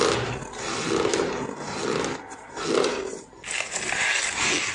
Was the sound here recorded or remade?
recorded